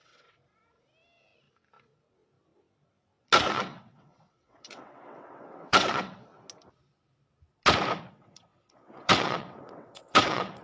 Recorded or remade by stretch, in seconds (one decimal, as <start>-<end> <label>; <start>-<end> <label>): 0.0-0.4 remade; 0.4-3.5 recorded; 3.5-6.3 remade; 6.3-8.1 recorded; 8.1-10.6 remade